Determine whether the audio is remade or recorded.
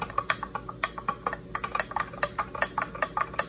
recorded